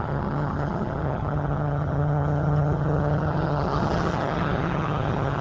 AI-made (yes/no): yes